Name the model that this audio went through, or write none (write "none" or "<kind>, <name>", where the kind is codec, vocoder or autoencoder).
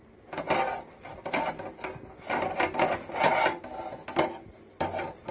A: none